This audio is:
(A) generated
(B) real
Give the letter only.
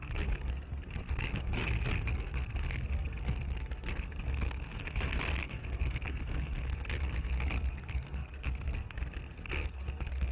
A